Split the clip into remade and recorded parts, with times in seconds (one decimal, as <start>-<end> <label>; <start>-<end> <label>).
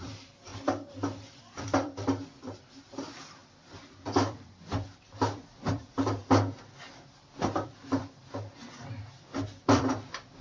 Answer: 0.0-0.5 remade; 0.5-1.4 recorded; 1.4-6.2 remade; 6.2-6.8 recorded; 6.8-8.2 remade; 8.2-9.6 recorded; 9.6-10.4 remade